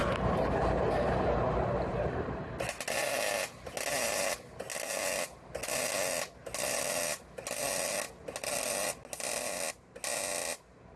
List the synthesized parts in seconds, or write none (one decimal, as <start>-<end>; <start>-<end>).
1.9-2.4